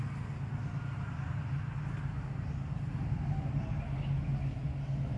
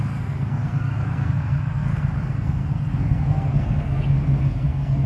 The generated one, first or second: second